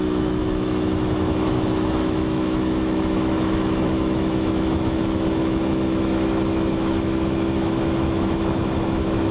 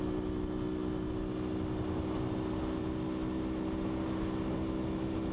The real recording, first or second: second